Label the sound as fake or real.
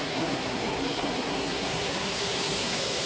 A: fake